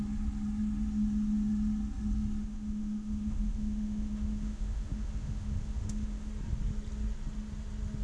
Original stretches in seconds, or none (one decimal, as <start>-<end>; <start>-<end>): 0.0-2.4; 6.3-8.0